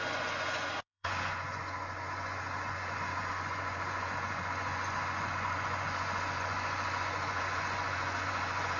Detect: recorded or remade remade